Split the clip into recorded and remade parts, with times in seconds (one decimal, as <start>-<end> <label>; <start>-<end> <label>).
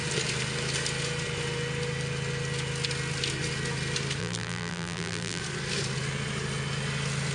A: 0.0-4.2 recorded; 4.2-5.4 remade; 5.4-7.3 recorded